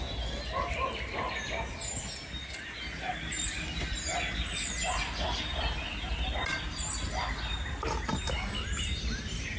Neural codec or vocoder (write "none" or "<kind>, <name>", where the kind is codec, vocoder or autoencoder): none